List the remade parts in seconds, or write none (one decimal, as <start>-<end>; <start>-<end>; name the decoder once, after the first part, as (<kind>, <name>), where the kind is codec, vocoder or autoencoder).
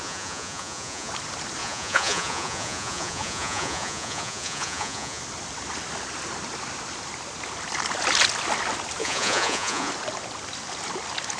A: 0.0-1.1 (vocoder, Vocos); 1.6-5.2; 9.0-9.9